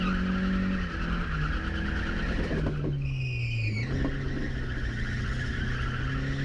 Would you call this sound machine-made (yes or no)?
no